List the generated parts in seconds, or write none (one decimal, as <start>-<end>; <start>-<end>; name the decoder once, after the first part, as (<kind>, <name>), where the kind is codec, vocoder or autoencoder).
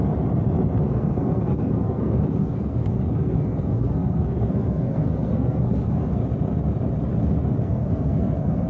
0.8-6.2 (codec, SNAC); 7.6-8.7